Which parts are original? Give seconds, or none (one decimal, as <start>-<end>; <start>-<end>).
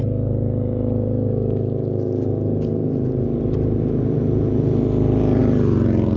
0.0-6.2